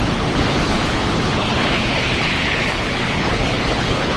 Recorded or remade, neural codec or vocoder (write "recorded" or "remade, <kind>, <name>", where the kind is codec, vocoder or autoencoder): remade, codec, HILCodec